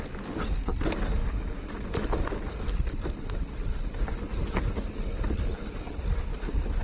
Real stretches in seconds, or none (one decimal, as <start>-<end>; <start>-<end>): 0.0-6.8

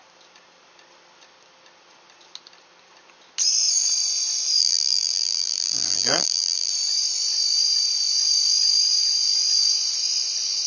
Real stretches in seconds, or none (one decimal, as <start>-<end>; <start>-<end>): 0.0-4.6; 6.7-10.7